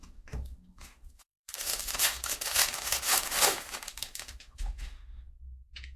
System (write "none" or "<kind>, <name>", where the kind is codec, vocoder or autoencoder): autoencoder, DAC-VAE